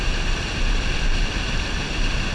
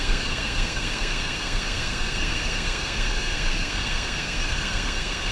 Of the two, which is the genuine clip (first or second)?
first